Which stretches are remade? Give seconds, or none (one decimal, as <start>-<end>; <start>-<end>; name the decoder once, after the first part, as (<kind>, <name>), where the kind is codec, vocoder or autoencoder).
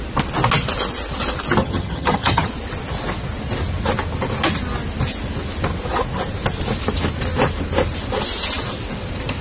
1.6-2.5 (vocoder, HiFi-GAN)